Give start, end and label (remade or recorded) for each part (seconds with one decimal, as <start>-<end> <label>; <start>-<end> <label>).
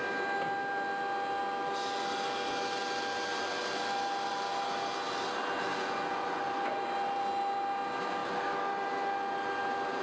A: 0.0-5.7 recorded; 5.7-6.4 remade; 6.4-10.0 recorded